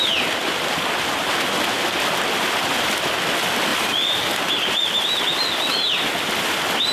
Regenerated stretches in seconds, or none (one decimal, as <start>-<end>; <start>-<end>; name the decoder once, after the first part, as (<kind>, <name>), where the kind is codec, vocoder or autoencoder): none